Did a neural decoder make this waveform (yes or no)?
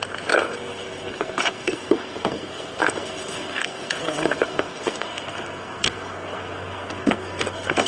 yes